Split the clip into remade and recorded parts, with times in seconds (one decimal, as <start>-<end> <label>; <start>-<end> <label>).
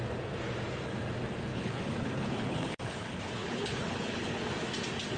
0.0-1.5 recorded; 1.5-4.4 remade; 4.4-5.2 recorded